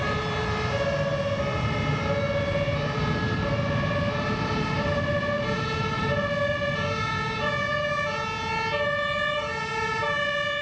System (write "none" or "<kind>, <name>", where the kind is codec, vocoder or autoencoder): none